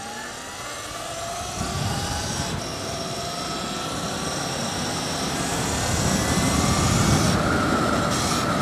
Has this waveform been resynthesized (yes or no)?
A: no